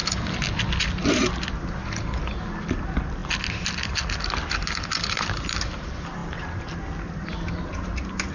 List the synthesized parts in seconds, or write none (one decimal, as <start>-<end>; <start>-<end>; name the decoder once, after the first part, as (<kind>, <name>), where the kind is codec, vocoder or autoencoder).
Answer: none